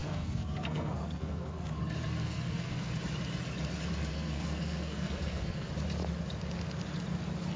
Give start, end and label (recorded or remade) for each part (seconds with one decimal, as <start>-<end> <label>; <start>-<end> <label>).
0.0-1.8 remade; 1.8-2.2 recorded; 2.2-2.9 remade; 2.9-4.1 recorded; 4.1-5.7 remade; 5.7-7.6 recorded